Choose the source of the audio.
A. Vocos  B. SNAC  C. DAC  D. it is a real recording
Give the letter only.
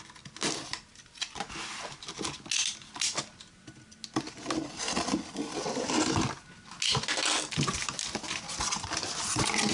D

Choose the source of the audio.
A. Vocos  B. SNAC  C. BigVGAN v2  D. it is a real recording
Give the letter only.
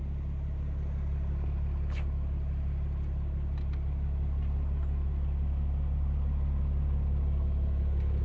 D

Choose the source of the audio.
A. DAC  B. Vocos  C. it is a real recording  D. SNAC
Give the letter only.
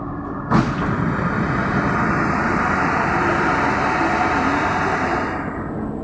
C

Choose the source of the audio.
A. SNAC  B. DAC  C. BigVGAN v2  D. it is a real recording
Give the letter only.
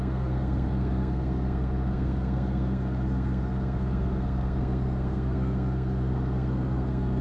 A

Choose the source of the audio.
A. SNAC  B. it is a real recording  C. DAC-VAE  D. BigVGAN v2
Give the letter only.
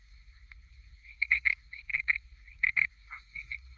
A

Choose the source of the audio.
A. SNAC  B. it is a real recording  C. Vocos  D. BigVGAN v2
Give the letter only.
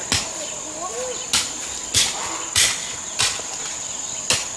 B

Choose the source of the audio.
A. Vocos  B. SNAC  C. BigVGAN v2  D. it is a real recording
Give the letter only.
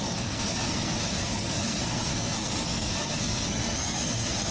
B